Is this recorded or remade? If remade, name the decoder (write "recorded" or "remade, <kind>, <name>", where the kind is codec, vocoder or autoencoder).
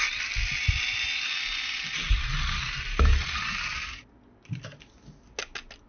recorded